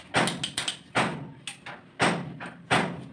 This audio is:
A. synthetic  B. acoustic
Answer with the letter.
B